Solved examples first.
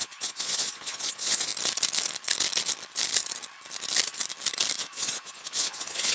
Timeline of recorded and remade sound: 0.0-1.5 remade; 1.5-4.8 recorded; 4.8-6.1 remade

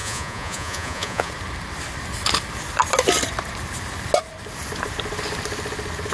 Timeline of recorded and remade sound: 0.0-1.3 remade; 1.3-6.1 recorded

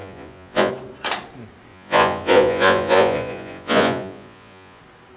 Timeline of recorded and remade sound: 0.0-0.7 remade; 0.7-1.7 recorded; 1.7-4.8 remade; 4.8-5.2 recorded

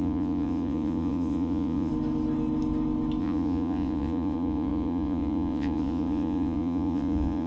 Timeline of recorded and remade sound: 0.0-1.9 remade; 1.9-3.2 recorded; 3.2-7.5 remade

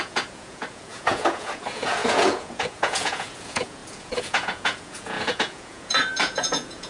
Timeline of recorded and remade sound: 0.0-6.9 remade

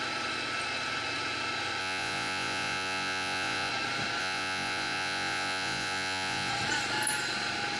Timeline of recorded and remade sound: 0.0-1.8 recorded; 1.8-3.7 remade; 3.7-4.2 recorded; 4.2-6.5 remade; 6.5-7.8 recorded

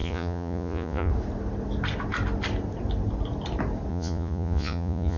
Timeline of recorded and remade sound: 0.0-1.1 remade; 1.1-3.9 recorded; 3.9-5.2 remade

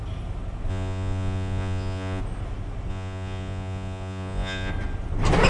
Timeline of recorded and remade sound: 0.0-0.7 recorded; 0.7-2.2 remade; 2.2-2.9 recorded; 2.9-4.7 remade; 4.7-5.5 recorded